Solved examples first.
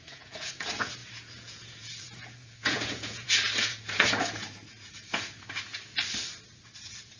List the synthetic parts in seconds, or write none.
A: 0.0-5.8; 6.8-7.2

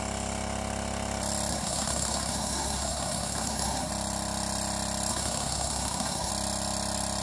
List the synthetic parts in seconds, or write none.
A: 1.5-3.9; 5.1-6.3

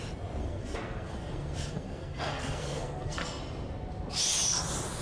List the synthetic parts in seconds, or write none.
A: 0.4-3.4

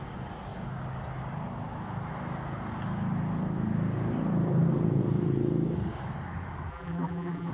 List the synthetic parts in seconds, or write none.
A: 6.7-7.5

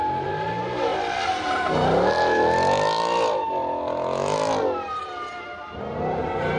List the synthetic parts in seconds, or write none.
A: none

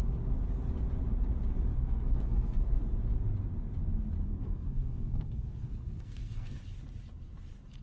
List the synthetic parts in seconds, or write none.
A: 1.7-2.7; 4.3-6.6

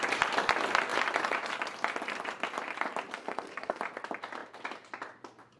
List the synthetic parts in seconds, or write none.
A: 3.2-3.8

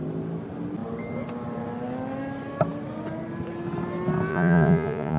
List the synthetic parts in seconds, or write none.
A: 4.3-5.2